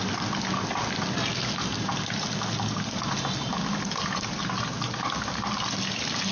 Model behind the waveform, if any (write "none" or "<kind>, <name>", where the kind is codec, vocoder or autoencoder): none